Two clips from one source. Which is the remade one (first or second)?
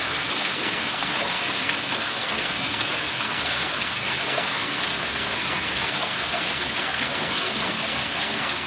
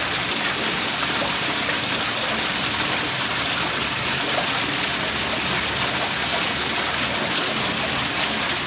first